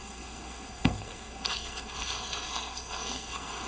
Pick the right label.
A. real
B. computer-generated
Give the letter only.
B